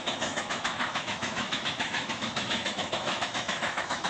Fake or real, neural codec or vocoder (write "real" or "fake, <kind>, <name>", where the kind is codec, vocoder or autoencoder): fake, autoencoder, DAC-VAE